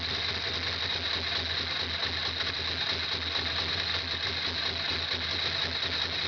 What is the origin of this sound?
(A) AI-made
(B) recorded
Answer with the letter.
B